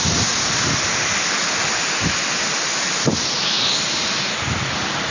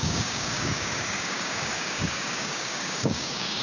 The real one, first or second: first